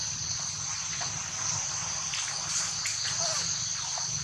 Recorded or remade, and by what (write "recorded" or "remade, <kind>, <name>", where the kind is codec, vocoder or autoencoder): recorded